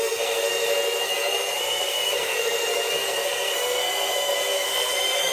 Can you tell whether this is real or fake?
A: fake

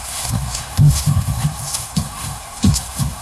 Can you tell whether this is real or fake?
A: fake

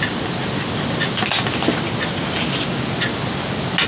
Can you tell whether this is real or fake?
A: real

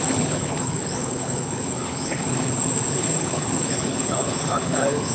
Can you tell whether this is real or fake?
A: fake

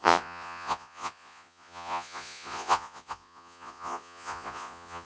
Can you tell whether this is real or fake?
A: fake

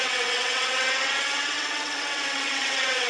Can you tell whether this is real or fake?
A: fake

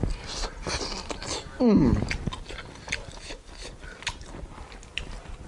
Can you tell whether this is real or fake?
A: real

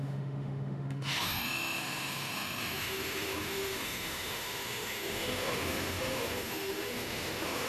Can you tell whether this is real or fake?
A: fake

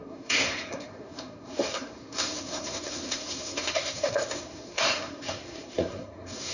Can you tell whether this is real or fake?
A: fake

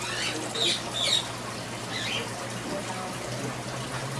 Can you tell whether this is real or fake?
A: real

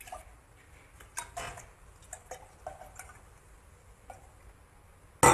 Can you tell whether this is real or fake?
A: real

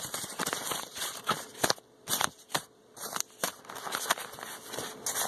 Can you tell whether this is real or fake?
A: real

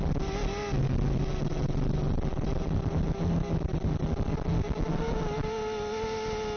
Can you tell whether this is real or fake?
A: real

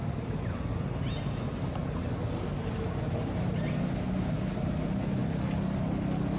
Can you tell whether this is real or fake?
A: real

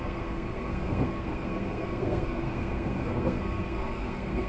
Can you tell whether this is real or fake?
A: fake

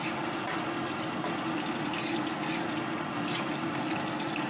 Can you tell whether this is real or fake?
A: real